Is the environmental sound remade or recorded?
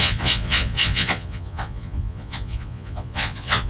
remade